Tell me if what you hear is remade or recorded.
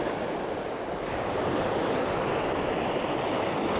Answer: recorded